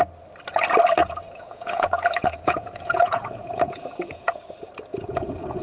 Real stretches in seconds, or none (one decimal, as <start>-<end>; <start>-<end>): 0.0-1.0; 4.4-4.9